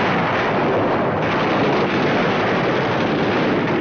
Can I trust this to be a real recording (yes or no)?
yes